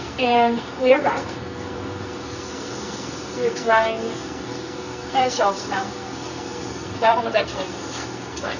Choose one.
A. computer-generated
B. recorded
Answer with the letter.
A